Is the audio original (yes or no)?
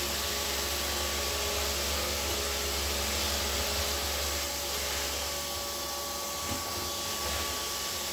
yes